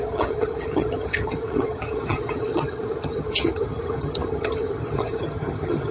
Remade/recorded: remade